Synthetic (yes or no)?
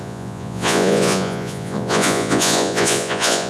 yes